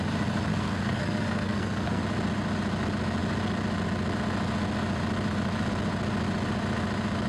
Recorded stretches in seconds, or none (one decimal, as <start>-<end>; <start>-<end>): 0.0-0.5; 2.0-7.3